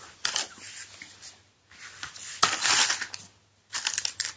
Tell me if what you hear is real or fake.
real